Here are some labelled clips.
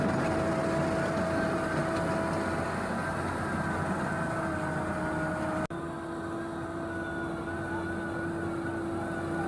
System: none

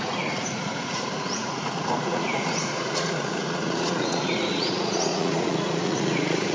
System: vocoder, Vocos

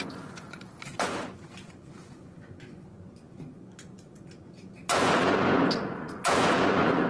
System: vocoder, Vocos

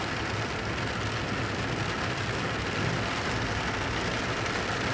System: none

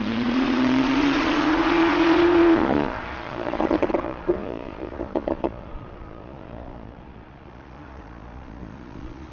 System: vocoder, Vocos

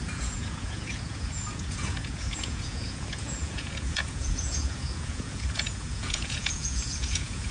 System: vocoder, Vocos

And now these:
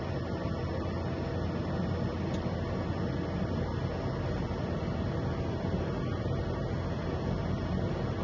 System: none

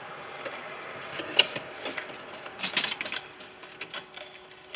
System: none